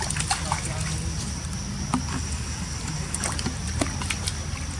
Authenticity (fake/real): real